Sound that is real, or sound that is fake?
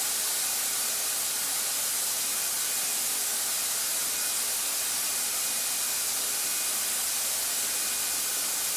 real